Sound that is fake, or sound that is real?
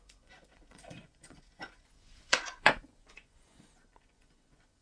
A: fake